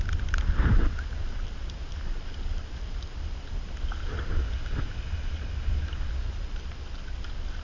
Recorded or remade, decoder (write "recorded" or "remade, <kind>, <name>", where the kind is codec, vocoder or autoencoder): recorded